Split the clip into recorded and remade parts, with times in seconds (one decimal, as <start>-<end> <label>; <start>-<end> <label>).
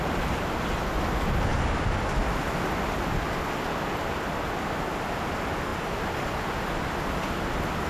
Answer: 0.0-7.9 recorded